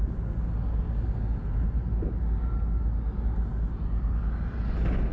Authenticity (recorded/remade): recorded